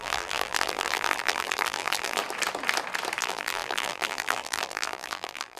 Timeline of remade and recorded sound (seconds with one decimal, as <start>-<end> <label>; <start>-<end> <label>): 0.0-2.2 remade; 2.2-3.2 recorded; 3.2-5.6 remade